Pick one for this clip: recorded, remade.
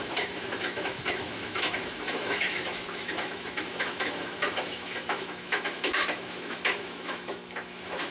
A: remade